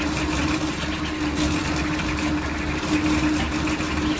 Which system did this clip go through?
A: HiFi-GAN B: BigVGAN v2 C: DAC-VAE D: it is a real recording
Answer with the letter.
D